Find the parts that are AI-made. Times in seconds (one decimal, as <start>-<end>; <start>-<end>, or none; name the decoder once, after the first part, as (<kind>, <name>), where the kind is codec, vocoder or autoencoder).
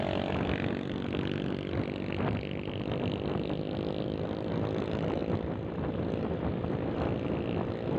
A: none